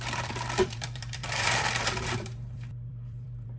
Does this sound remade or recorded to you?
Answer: remade